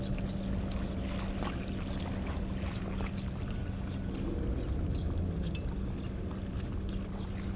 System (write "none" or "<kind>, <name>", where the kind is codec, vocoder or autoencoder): none